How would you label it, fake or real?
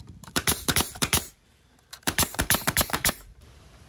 fake